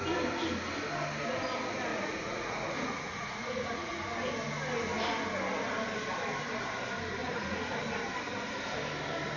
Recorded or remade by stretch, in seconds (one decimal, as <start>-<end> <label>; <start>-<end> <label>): 0.0-1.9 recorded; 1.9-4.1 remade; 4.1-7.2 recorded; 7.2-7.8 remade; 7.8-9.4 recorded

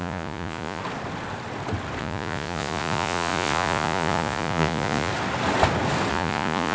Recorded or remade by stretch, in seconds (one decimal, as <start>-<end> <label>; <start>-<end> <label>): 0.0-0.8 remade; 0.8-2.0 recorded; 2.0-5.1 remade; 5.1-6.1 recorded; 6.1-6.7 remade